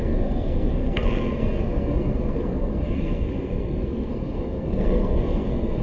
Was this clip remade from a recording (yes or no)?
yes